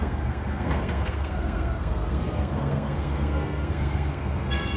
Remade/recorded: remade